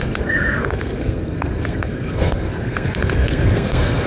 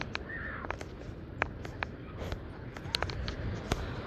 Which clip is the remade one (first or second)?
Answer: first